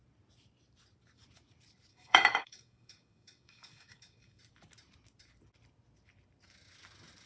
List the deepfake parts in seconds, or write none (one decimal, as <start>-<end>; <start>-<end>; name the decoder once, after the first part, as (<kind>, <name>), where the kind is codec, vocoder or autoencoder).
1.9-4.4 (codec, DAC)